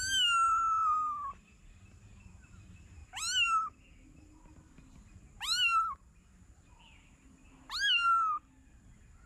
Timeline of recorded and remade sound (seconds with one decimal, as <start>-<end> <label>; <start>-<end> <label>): 0.0-9.3 recorded